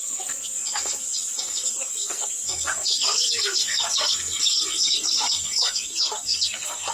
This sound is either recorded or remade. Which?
remade